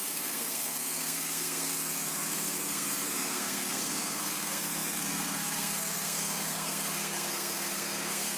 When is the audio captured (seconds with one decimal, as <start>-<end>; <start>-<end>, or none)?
none